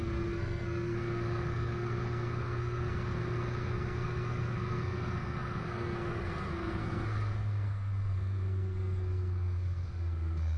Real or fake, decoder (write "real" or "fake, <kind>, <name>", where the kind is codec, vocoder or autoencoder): fake, codec, SNAC